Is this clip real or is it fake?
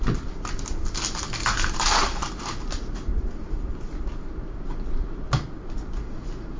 real